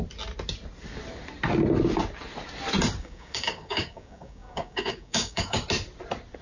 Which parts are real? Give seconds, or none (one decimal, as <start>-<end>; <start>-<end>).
0.0-3.0; 5.6-6.4